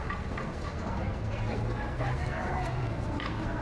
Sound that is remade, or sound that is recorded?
remade